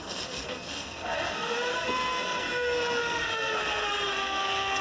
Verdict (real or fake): fake